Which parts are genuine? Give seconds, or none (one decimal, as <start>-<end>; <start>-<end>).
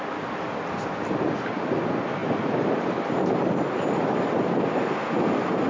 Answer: 0.0-5.7